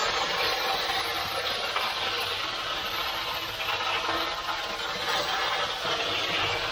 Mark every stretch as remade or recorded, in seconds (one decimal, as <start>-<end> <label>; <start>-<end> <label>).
0.0-6.7 recorded